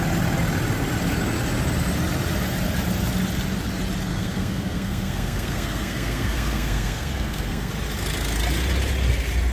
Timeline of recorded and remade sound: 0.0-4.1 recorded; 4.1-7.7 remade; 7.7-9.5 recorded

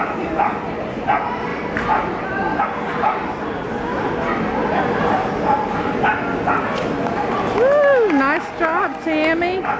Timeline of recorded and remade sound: 0.0-9.8 recorded

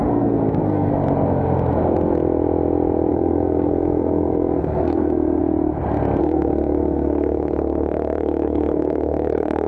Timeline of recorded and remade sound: 0.0-0.9 remade; 0.9-3.1 recorded; 3.1-5.4 remade; 5.4-6.2 recorded; 6.2-9.7 remade